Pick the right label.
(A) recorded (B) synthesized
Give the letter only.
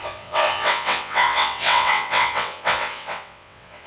B